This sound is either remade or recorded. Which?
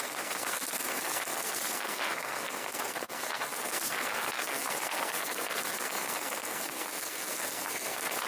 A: remade